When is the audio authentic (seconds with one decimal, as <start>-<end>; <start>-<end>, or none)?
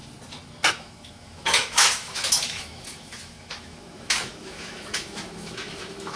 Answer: 0.0-0.7